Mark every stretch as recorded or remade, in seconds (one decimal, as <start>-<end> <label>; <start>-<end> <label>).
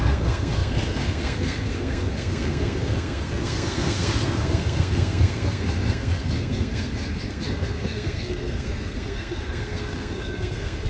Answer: 0.0-10.9 remade